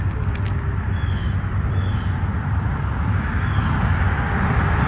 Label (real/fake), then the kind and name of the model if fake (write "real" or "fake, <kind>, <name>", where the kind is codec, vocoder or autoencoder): real